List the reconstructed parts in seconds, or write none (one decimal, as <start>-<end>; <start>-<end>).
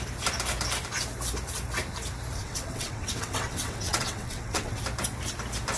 2.4-4.8